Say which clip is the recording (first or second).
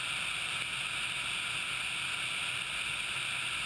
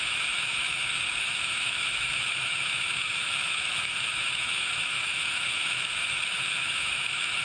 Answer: first